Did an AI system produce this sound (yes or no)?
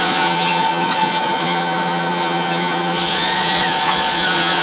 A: yes